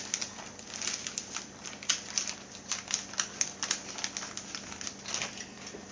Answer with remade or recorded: recorded